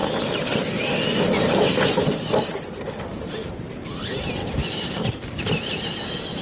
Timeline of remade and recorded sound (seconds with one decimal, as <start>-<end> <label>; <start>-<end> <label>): 0.0-3.4 recorded; 3.4-4.0 remade; 4.0-4.4 recorded; 4.4-5.1 remade; 5.1-6.4 recorded